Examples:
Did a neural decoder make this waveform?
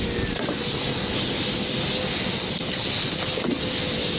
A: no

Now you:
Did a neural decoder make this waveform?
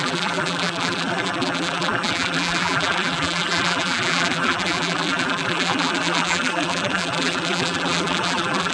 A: yes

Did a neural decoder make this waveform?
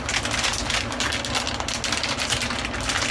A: no